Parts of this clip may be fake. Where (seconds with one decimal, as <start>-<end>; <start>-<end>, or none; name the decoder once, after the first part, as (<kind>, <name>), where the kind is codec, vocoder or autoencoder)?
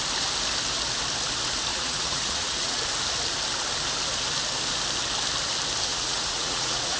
1.7-2.8 (vocoder, Vocos); 5.9-7.0